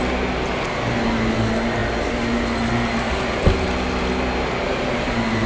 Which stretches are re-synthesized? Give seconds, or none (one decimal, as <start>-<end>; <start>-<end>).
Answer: none